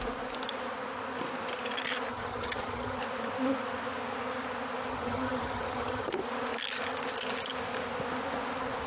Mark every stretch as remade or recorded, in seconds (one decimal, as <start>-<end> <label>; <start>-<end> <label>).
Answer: 0.0-2.1 recorded; 2.1-3.0 remade; 3.0-4.9 recorded; 4.9-6.1 remade; 6.1-8.9 recorded